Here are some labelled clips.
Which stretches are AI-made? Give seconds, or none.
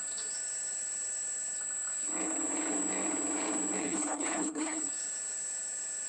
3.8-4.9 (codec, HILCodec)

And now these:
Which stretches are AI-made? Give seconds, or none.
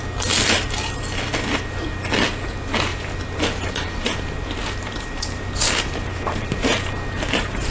2.9-7.7 (vocoder, BigVGAN v2)